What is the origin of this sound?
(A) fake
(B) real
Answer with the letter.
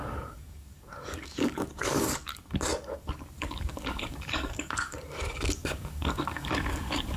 A